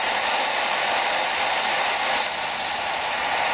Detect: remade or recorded recorded